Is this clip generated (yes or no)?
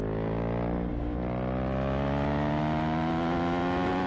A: no